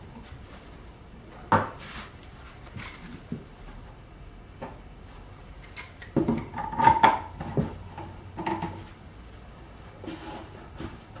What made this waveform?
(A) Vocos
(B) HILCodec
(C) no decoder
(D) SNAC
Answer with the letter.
C